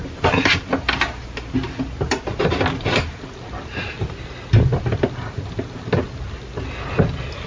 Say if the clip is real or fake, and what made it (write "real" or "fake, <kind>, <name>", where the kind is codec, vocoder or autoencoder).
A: real